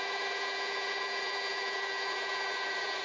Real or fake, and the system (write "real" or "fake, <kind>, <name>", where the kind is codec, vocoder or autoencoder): fake, vocoder, Vocos